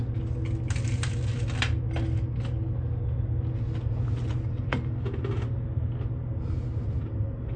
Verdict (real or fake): real